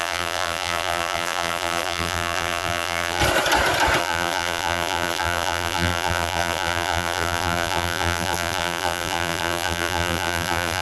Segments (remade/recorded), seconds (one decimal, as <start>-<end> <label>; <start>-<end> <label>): 0.0-3.2 remade; 3.2-4.0 recorded; 4.0-10.8 remade